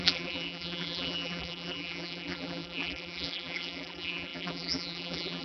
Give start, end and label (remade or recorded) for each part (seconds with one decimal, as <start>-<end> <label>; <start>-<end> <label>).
0.0-5.4 remade